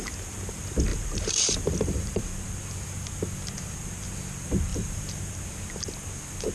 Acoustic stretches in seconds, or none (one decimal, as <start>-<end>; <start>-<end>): 0.0-0.9; 2.3-4.7; 5.3-6.5